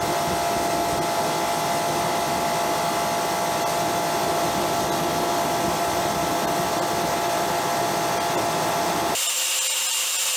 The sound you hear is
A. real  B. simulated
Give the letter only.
A